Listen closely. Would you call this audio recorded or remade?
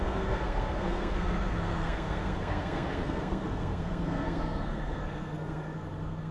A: remade